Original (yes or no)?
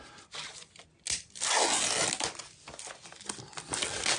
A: yes